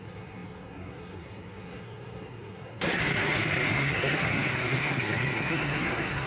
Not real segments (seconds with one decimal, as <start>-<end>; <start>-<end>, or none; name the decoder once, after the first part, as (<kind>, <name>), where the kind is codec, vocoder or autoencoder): 0.0-6.3 (codec, SNAC)